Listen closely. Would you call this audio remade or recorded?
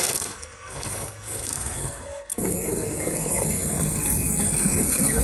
remade